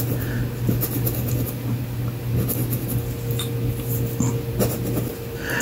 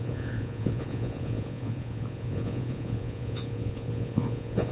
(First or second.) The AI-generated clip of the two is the second